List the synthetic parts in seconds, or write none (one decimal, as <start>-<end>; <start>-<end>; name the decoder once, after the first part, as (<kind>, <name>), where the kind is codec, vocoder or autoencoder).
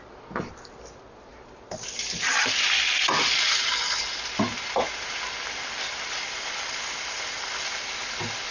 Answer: none